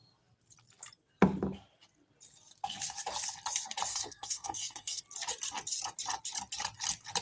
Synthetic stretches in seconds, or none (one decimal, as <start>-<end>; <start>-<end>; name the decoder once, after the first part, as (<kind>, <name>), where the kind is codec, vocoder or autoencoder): 3.9-5.0 (codec, SNAC)